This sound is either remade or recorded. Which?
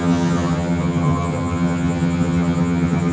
remade